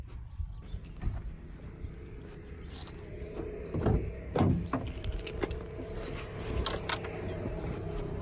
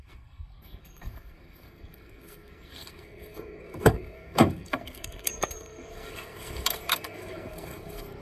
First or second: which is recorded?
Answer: first